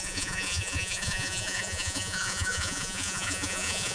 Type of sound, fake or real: fake